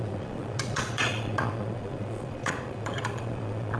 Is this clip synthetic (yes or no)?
yes